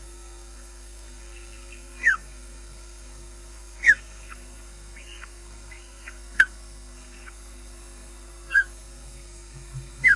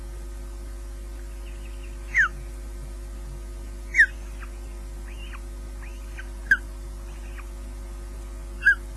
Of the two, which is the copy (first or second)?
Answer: first